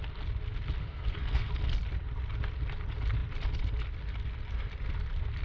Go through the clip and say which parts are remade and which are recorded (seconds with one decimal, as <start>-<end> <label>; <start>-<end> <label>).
0.0-0.8 recorded; 0.8-1.5 remade; 1.5-5.4 recorded